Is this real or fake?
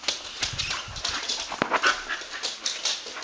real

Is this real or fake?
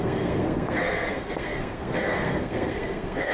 fake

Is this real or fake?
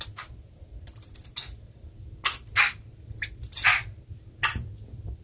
real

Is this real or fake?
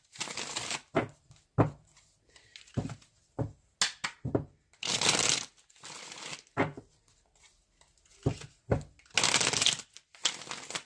real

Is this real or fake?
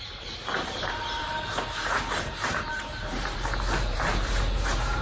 fake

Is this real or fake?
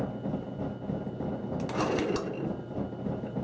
real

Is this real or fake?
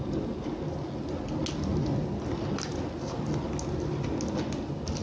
real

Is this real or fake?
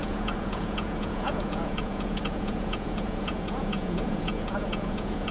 fake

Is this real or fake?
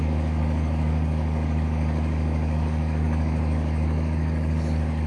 fake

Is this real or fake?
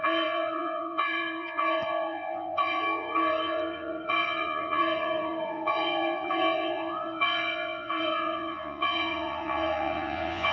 fake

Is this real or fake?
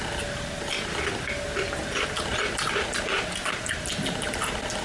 real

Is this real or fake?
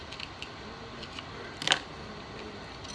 real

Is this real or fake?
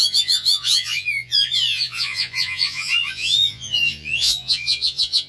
fake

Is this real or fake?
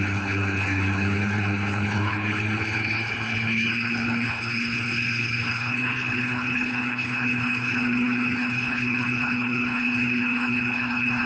fake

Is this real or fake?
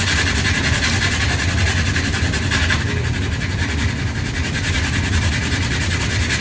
real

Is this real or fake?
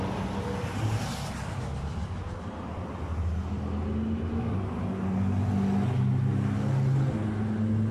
real